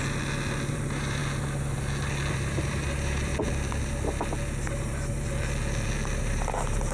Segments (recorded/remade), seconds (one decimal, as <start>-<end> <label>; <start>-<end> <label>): 0.0-0.7 recorded; 0.7-1.2 remade; 1.2-2.3 recorded; 2.3-3.3 remade; 3.3-6.2 recorded; 6.2-6.9 remade